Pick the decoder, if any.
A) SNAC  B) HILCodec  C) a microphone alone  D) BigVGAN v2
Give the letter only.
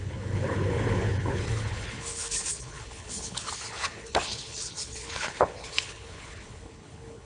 B